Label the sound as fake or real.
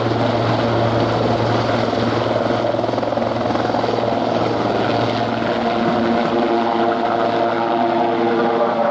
real